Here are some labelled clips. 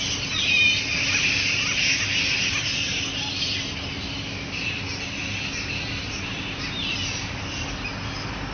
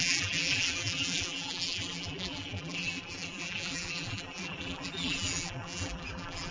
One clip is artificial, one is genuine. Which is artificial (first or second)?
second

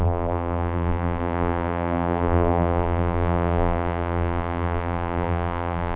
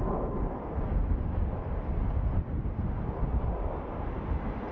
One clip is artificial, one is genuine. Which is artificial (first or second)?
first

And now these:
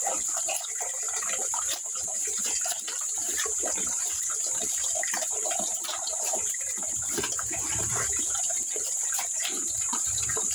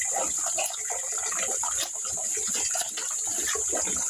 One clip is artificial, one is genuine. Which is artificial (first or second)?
first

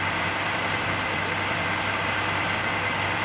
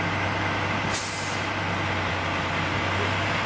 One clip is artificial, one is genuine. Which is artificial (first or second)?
first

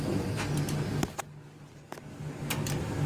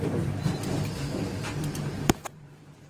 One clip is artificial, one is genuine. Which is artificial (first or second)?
second